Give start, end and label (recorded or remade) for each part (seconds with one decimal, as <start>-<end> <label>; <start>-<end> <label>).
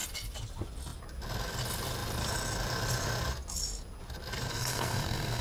0.0-4.5 recorded; 4.5-5.4 remade